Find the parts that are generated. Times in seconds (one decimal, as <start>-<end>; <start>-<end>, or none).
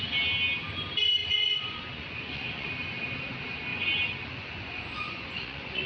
1.2-2.7; 3.7-5.9